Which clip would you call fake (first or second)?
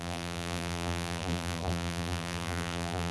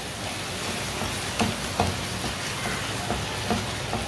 first